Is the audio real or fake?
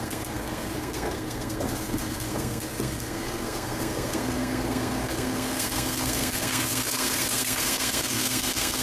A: fake